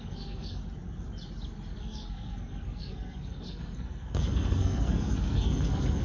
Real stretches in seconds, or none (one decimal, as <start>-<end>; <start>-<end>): 0.6-1.7